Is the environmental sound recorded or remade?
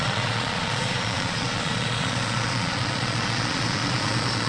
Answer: remade